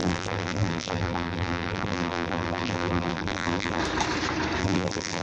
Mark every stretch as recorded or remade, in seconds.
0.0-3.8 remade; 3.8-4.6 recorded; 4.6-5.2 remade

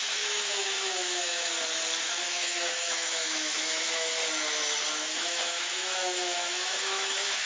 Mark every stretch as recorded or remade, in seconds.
0.0-1.5 remade; 1.5-2.0 recorded; 2.0-4.2 remade; 4.2-4.9 recorded; 4.9-7.5 remade

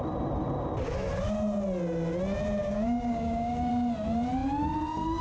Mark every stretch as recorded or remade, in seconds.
0.0-2.6 recorded; 2.6-3.7 remade; 3.7-5.2 recorded

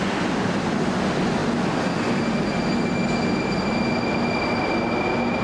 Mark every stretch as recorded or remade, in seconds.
0.0-5.4 recorded

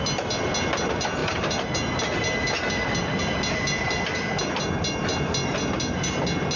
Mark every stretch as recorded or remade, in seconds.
0.0-6.6 recorded

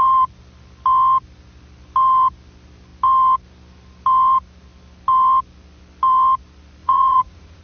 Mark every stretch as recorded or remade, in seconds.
0.0-6.8 recorded; 6.8-7.6 remade